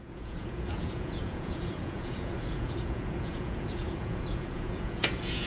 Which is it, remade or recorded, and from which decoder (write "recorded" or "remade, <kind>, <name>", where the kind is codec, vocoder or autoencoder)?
remade, vocoder, Vocos